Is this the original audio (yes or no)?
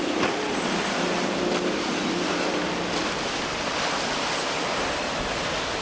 yes